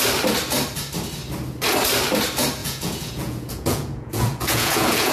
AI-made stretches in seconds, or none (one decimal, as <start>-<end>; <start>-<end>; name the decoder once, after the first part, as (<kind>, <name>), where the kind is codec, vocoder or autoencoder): 2.6-5.1 (vocoder, Vocos)